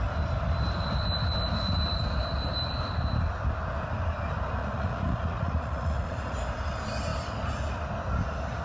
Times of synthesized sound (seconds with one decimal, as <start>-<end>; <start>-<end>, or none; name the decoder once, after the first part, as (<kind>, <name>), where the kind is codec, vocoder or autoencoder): 4.6-6.3 (vocoder, Vocos)